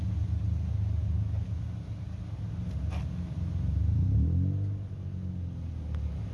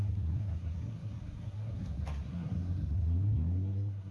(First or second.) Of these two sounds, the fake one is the second